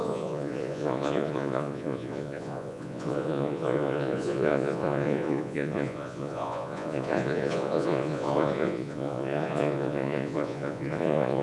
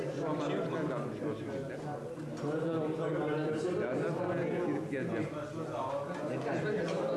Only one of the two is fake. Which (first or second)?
first